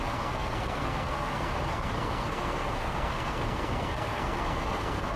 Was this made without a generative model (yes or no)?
no